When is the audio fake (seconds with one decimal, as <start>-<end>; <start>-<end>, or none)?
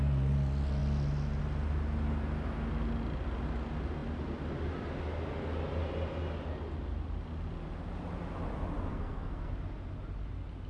8.9-9.5